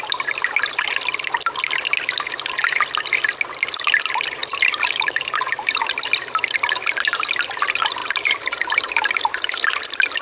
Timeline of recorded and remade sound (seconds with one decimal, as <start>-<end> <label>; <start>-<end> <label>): 0.0-4.4 recorded; 4.4-5.8 remade; 5.8-8.0 recorded; 8.0-9.6 remade; 9.6-10.2 recorded